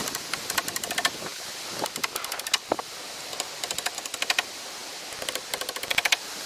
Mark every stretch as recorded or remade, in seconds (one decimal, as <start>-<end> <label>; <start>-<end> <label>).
0.0-6.5 recorded